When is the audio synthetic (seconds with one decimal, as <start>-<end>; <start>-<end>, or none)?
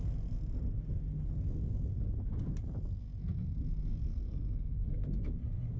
4.1-5.2